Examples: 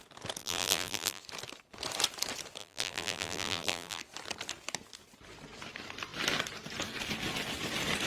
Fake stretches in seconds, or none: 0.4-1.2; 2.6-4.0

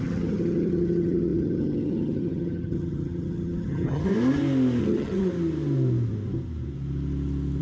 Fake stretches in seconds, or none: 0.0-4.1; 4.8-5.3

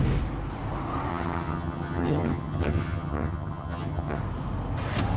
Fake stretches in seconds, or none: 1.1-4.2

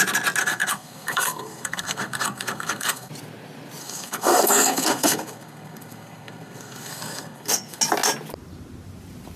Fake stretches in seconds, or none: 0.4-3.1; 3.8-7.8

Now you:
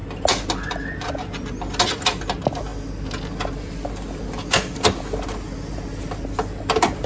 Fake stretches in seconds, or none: none